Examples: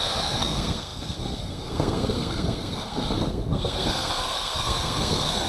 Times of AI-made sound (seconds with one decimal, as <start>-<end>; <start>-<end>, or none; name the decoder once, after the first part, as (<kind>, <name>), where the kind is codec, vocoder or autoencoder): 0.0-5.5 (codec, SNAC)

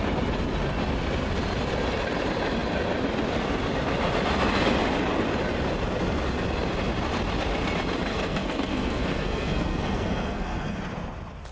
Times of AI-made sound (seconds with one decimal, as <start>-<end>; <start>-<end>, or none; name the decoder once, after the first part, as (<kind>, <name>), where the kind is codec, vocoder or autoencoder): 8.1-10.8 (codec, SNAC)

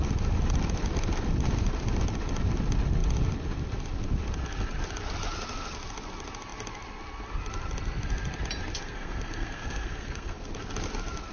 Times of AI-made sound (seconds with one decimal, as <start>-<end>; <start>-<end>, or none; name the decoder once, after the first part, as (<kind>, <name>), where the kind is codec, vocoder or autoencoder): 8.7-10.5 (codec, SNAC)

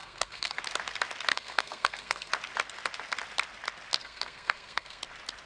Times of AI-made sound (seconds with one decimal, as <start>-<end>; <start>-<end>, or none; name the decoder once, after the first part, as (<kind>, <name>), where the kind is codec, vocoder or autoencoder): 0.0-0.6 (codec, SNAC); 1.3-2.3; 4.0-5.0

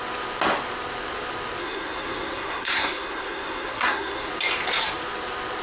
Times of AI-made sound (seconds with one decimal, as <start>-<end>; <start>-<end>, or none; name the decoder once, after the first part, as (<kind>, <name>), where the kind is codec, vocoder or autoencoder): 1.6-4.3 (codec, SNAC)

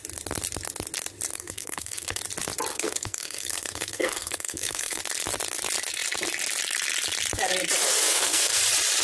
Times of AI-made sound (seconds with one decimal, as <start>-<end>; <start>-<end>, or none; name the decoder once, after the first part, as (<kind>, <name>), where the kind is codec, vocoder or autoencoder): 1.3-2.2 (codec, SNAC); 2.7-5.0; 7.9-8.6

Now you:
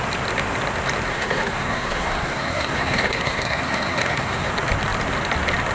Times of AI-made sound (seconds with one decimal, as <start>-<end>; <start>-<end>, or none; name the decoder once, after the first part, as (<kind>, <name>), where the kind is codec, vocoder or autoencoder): 1.1-4.5 (codec, SNAC)

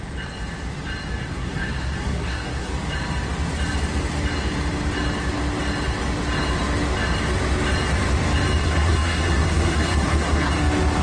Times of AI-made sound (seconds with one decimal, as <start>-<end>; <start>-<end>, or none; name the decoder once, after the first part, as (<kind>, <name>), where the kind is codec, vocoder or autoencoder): 1.2-2.7 (codec, SNAC); 8.6-10.5